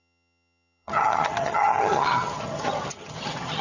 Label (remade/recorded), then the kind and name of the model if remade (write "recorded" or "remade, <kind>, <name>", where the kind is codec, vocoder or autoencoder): remade, vocoder, HiFi-GAN